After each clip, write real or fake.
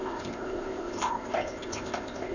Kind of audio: fake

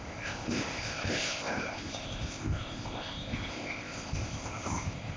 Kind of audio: fake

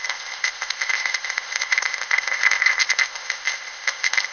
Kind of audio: fake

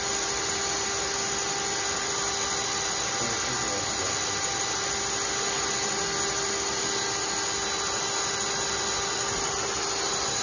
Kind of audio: real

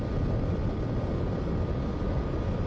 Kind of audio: real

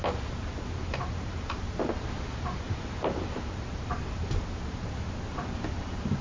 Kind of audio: real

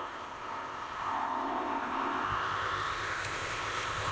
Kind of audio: fake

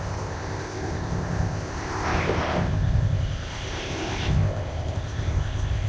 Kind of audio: fake